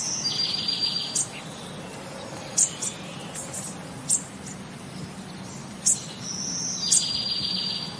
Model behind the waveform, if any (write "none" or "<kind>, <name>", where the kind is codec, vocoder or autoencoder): none